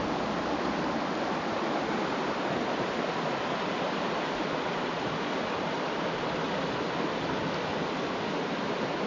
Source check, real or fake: real